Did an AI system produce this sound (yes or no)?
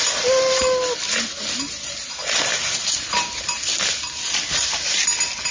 no